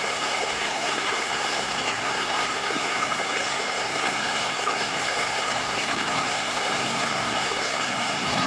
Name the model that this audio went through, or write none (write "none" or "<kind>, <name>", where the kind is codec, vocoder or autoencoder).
codec, SNAC